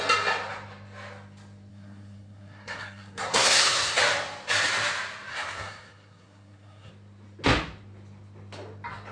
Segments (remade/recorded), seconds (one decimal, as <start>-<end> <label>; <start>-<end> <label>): 0.0-1.7 recorded; 1.7-4.0 remade; 4.0-5.3 recorded; 5.3-6.9 remade; 6.9-9.1 recorded